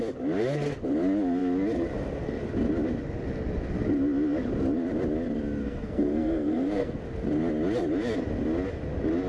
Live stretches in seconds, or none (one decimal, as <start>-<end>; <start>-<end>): 0.0-5.6; 7.0-9.3